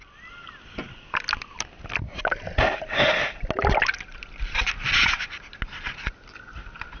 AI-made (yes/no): no